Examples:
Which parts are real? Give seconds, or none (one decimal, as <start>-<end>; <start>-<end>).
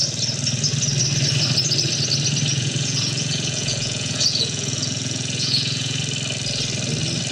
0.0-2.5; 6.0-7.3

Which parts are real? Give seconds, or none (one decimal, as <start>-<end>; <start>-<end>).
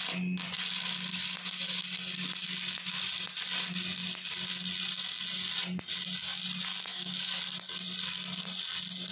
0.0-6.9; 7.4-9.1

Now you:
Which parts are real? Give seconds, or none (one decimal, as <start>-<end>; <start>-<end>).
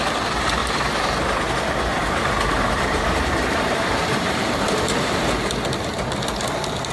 0.0-0.6; 1.4-1.9; 5.5-6.9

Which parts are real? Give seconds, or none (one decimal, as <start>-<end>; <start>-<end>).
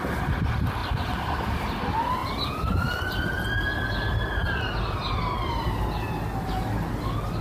0.0-7.4